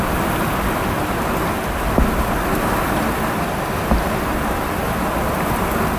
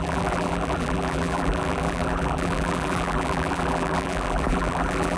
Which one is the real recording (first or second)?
first